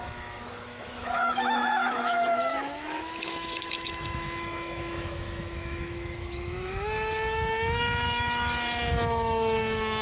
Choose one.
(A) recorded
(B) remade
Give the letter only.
B